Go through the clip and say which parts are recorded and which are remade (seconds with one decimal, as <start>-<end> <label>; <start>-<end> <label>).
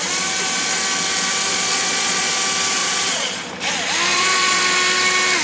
0.0-1.5 recorded; 1.5-2.3 remade; 2.3-2.8 recorded; 2.8-3.5 remade; 3.5-4.1 recorded; 4.1-4.6 remade; 4.6-5.4 recorded